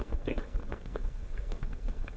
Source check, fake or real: fake